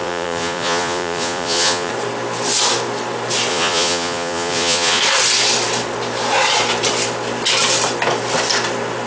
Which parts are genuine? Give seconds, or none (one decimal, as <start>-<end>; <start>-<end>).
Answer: 1.9-3.5; 5.0-9.1